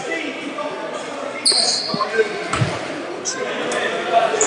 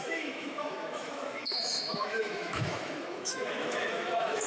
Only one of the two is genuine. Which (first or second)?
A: first